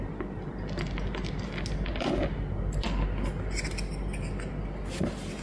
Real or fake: real